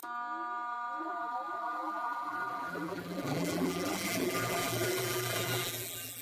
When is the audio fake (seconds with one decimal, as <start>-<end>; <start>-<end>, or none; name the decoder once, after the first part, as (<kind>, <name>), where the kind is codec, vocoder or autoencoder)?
1.0-6.2 (vocoder, BigVGAN v2)